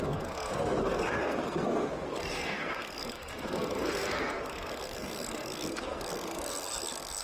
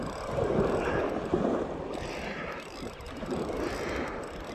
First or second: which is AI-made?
first